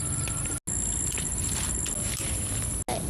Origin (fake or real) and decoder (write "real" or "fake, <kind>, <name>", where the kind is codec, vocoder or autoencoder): real